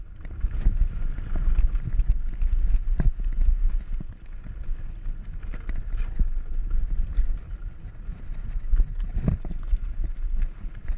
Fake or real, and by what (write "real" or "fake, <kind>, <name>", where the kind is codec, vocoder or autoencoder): real